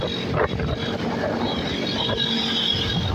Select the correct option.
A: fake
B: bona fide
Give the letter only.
B